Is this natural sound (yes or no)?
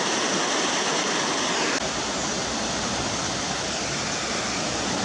yes